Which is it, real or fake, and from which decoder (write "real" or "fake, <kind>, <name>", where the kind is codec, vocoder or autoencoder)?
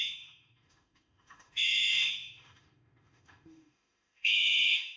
fake, autoencoder, DAC-VAE